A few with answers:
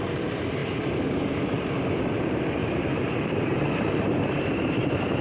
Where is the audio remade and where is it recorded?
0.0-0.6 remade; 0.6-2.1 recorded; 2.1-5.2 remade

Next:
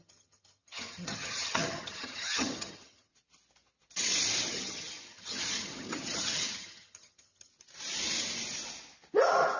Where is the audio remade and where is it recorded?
0.0-3.1 remade; 3.1-4.5 recorded; 4.5-7.5 remade; 7.5-9.6 recorded

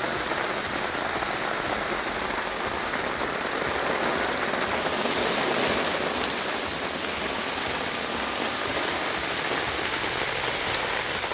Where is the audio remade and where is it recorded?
0.0-11.3 recorded

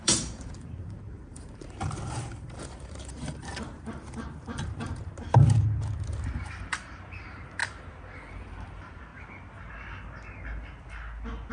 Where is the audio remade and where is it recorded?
0.0-5.0 remade; 5.0-6.4 recorded; 6.4-7.6 remade; 7.6-8.3 recorded; 8.3-9.1 remade; 9.1-11.5 recorded